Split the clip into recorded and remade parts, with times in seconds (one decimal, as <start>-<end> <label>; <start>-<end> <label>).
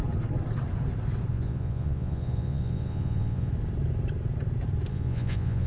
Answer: 0.0-1.3 recorded; 1.3-3.5 remade; 3.5-4.9 recorded; 4.9-5.7 remade